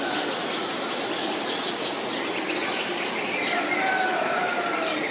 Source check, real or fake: fake